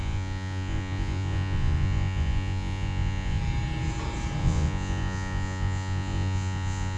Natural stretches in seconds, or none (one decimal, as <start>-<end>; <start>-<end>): 3.4-4.4